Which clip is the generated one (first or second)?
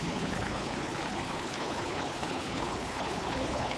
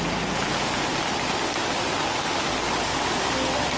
first